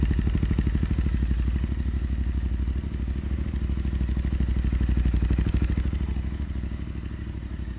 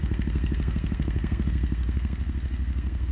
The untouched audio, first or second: first